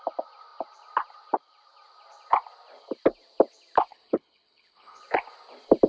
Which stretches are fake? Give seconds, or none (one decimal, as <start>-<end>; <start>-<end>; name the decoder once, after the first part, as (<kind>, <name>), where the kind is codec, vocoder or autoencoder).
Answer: 3.9-5.0 (codec, HILCodec)

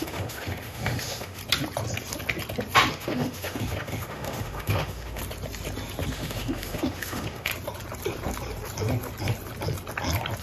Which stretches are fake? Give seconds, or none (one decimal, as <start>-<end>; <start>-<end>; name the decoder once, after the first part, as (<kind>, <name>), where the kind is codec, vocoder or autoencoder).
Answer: 0.0-1.4 (autoencoder, DAC-VAE); 2.9-5.2; 6.1-7.5

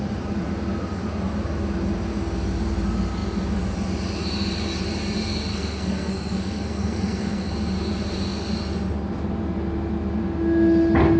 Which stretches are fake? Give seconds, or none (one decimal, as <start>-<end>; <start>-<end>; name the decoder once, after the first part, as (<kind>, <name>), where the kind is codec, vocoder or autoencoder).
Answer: 5.5-7.5 (codec, SNAC)

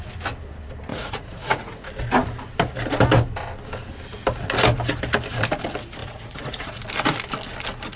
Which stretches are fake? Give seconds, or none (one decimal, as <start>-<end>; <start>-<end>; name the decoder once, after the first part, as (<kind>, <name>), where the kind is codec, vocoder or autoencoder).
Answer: 0.9-1.8 (vocoder, Vocos); 6.0-6.8

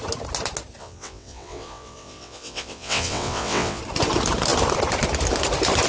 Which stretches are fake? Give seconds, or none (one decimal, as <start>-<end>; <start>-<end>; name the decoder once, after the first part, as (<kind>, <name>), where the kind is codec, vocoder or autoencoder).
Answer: 0.8-3.8 (vocoder, WaveNeXt)

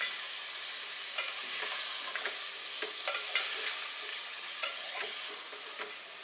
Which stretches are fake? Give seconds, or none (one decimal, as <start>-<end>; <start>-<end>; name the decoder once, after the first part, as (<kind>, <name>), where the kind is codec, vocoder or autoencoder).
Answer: 4.1-5.2 (vocoder, HiFi-GAN)